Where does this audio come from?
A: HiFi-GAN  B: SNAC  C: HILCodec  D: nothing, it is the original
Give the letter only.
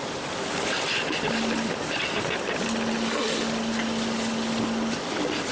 D